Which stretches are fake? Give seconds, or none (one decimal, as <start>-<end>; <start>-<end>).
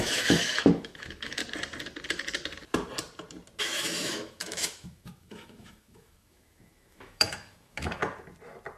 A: 0.0-1.4; 3.6-8.0